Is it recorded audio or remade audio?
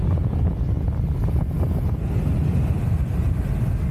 recorded